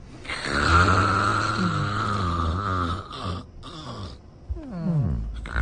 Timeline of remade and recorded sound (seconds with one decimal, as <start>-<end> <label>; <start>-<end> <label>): 0.0-5.6 recorded